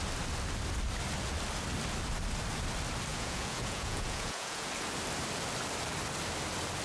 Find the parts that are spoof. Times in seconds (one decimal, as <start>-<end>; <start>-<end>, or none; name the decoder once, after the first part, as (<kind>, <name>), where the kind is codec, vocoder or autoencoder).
3.1-4.7 (vocoder, Vocos)